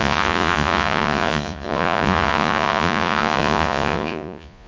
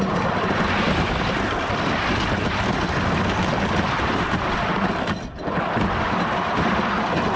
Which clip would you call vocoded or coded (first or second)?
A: first